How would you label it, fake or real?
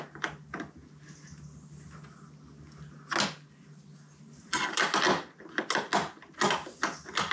real